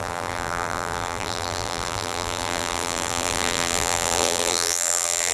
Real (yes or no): no